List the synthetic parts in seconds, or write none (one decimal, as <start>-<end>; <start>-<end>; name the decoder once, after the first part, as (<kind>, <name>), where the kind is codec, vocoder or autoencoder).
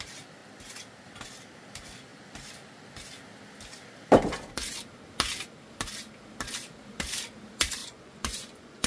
7.8-8.9 (vocoder, Vocos)